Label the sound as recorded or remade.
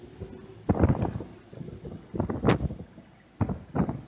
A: recorded